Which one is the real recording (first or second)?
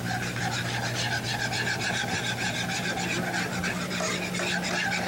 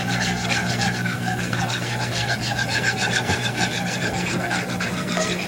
first